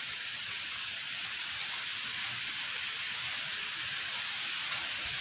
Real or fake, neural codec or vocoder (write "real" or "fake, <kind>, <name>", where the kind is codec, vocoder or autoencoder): real